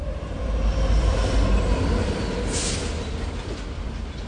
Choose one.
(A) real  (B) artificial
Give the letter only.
B